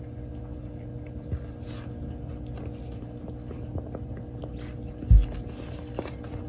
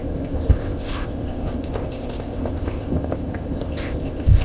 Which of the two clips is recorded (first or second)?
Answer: first